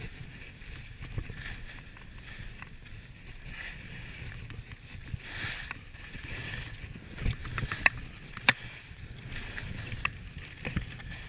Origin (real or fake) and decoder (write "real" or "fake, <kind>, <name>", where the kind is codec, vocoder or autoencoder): real